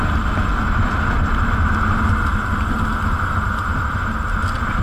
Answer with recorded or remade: recorded